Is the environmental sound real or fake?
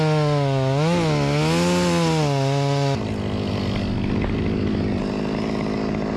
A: real